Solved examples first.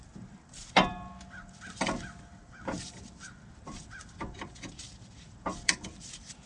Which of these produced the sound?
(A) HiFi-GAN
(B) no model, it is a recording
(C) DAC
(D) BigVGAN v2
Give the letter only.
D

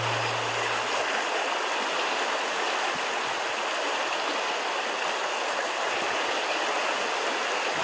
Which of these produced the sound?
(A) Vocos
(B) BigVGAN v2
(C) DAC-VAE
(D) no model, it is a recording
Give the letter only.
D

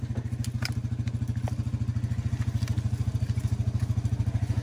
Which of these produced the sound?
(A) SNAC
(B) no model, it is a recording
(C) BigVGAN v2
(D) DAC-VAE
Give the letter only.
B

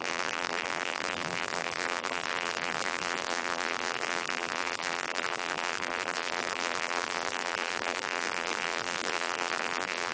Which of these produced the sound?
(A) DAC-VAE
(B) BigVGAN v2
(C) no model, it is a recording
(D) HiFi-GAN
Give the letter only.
B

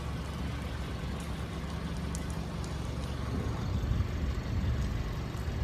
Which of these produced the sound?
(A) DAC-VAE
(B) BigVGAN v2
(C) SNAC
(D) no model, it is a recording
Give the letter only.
D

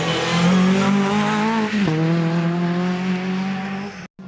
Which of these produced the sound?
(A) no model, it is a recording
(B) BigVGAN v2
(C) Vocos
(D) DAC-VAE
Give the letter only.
A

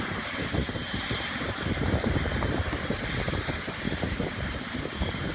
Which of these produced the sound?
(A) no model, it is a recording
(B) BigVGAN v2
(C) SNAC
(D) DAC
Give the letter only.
B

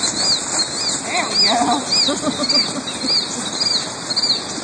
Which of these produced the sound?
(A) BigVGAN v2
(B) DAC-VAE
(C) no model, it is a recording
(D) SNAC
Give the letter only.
C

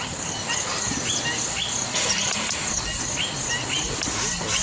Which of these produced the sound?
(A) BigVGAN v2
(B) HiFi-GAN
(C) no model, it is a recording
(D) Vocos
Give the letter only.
A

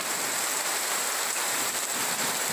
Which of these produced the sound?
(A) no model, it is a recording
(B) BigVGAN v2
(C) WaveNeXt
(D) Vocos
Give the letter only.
B